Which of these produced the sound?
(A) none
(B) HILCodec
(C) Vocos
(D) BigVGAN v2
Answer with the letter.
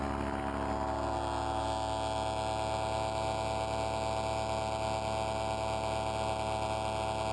A